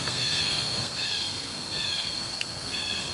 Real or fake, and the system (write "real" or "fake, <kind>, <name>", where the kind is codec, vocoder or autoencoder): fake, codec, SNAC